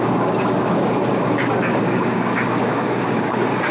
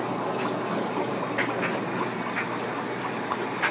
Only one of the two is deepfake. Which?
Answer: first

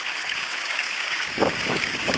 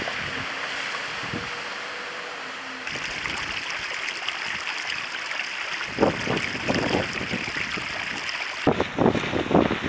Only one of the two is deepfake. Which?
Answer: first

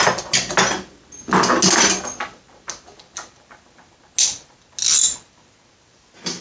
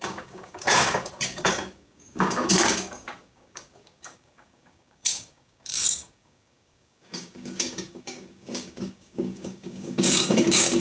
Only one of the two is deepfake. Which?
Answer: second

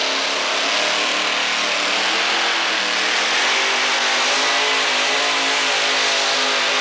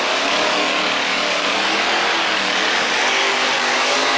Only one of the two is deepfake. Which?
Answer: second